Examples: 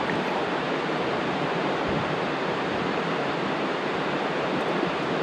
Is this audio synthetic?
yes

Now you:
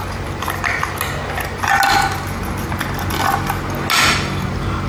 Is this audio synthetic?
no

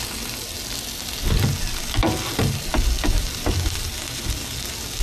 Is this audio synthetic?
no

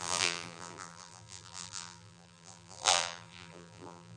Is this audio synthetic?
yes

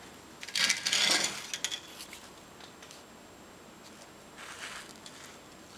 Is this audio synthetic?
no